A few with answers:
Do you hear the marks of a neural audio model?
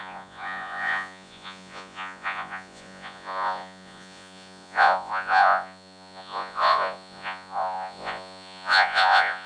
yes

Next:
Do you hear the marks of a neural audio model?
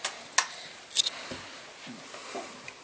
no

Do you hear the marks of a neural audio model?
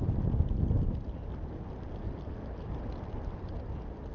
no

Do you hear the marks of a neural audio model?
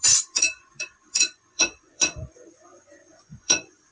yes